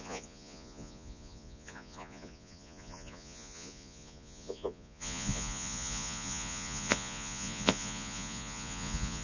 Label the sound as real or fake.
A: fake